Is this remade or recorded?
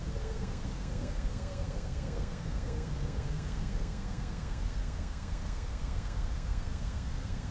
remade